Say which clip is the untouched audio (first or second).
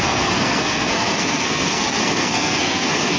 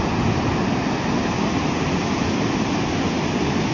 second